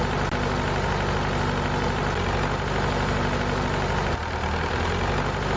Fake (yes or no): no